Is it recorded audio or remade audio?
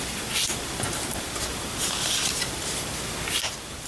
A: recorded